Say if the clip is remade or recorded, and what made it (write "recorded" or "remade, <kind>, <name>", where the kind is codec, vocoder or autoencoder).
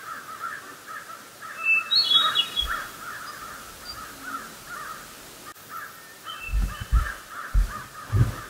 recorded